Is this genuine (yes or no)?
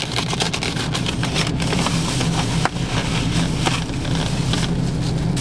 yes